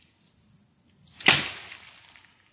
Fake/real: real